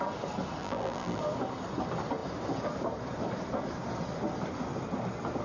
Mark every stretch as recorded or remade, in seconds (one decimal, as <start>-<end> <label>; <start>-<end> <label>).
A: 0.0-0.6 recorded; 0.6-1.2 remade; 1.2-5.4 recorded